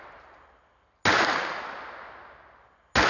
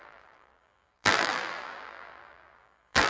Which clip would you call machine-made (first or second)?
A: second